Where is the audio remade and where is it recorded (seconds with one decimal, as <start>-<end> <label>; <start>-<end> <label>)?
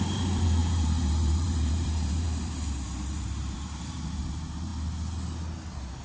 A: 0.0-4.7 remade; 4.7-6.0 recorded